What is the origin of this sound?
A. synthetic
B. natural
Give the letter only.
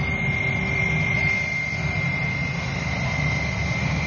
B